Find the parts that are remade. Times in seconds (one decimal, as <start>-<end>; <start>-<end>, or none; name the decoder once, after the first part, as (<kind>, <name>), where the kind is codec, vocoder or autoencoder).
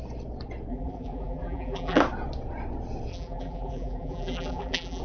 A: 0.7-2.0 (vocoder, BigVGAN v2); 3.1-5.0